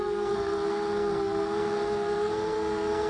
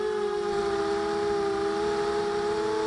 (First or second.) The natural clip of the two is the second